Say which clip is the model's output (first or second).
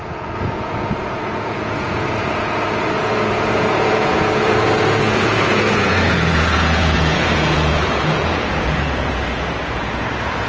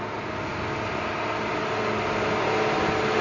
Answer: first